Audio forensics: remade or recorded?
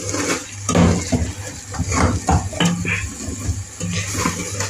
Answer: recorded